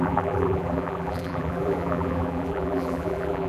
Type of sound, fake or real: fake